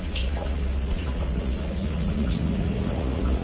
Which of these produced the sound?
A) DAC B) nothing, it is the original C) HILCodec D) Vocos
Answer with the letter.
D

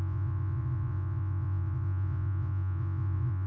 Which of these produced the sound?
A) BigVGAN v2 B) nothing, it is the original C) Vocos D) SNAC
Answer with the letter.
C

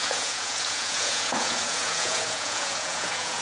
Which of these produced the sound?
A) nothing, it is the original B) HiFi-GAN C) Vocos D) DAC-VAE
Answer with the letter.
C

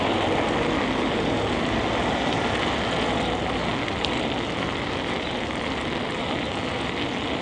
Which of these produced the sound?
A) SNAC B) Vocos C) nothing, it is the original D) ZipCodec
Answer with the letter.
C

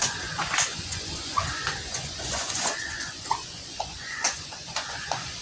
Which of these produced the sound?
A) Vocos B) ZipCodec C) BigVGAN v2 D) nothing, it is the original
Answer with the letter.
A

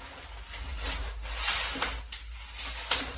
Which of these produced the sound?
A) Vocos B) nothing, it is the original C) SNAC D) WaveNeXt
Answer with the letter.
B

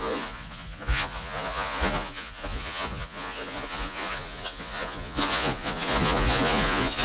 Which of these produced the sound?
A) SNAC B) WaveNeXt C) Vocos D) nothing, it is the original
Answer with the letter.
C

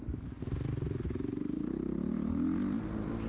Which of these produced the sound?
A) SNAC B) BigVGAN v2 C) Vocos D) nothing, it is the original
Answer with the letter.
D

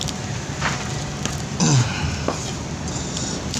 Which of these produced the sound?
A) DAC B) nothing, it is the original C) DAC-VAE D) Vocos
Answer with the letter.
B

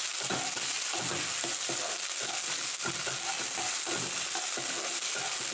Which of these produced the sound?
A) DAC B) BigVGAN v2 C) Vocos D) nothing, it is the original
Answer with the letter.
D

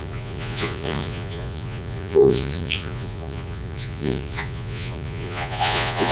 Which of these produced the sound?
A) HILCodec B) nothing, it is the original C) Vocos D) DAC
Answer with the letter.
C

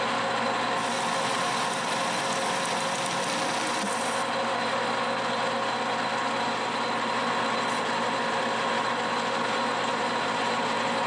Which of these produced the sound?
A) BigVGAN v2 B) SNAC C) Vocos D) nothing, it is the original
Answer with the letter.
D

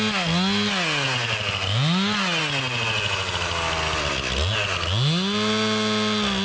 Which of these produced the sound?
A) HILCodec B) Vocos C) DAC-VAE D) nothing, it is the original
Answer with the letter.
D